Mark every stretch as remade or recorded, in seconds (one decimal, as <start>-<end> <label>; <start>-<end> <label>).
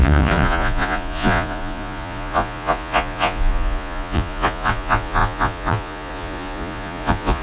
0.0-7.4 remade